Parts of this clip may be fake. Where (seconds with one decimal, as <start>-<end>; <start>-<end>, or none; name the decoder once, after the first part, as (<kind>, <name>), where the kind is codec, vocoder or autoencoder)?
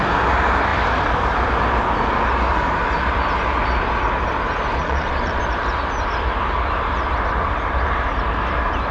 4.8-5.4 (vocoder, Vocos)